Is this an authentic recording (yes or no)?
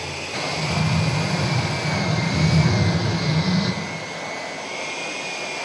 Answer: yes